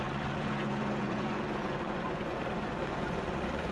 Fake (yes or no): yes